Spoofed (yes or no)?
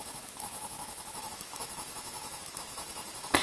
yes